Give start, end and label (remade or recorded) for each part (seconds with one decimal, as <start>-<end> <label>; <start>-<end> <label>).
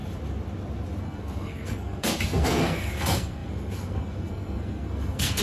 0.0-1.0 recorded; 1.0-5.4 remade